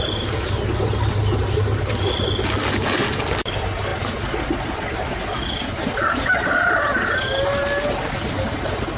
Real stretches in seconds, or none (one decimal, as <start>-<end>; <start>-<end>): 0.0-9.0